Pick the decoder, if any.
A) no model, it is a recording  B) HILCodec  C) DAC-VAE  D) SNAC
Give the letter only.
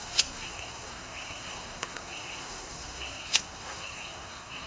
D